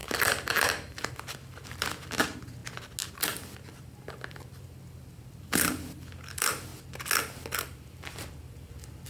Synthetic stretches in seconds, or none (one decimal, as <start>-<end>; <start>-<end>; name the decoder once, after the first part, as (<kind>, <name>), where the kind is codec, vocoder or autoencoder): 0.0-2.6 (vocoder, BigVGAN v2); 3.1-6.7; 7.4-9.1

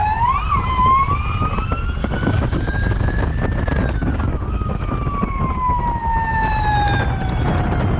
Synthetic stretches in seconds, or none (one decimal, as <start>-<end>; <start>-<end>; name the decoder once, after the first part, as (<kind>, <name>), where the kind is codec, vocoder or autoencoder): 2.0-3.3 (codec, DAC); 4.0-4.9

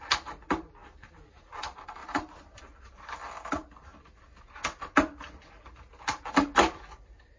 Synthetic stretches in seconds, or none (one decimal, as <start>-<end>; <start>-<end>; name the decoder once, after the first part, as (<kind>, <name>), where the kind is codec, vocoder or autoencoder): 0.8-1.6 (vocoder, BigVGAN v2); 2.0-2.6

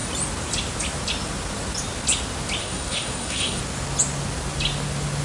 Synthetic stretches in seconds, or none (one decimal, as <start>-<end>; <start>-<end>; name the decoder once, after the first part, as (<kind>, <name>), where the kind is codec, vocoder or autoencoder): 2.6-3.6 (codec, SNAC)

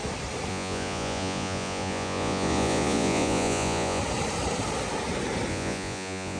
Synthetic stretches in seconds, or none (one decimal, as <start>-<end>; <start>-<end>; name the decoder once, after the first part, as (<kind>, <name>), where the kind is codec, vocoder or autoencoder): 0.5-4.0 (vocoder, Vocos); 5.5-6.4

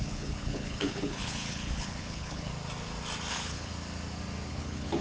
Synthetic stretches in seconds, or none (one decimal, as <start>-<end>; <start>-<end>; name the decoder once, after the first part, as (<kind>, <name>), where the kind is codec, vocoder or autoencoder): 0.0-2.5 (codec, HILCodec); 3.3-3.7; 4.5-5.0

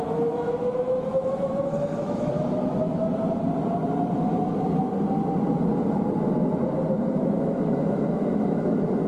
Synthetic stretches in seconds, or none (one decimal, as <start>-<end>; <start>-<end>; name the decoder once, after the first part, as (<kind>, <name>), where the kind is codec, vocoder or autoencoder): 0.0-3.1 (autoencoder, DAC-VAE); 7.2-9.1